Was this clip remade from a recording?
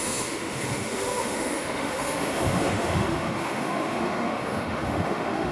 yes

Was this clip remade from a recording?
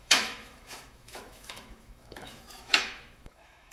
yes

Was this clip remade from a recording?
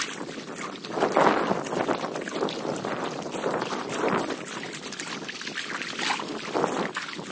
no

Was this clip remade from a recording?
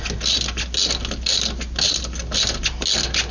no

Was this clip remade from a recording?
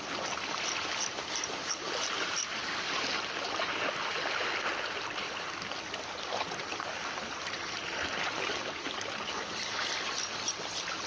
no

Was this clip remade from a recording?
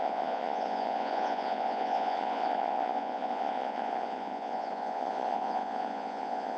yes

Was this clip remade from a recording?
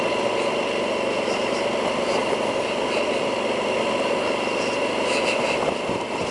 no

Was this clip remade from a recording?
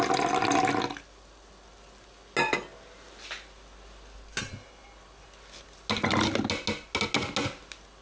no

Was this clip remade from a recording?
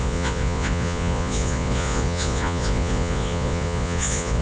yes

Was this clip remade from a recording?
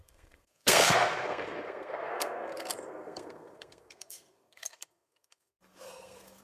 yes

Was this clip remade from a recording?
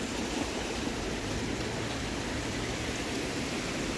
yes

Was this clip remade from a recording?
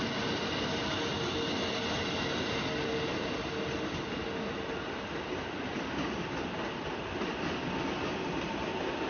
no